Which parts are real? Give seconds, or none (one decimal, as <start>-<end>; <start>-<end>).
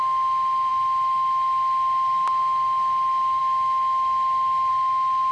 0.0-5.3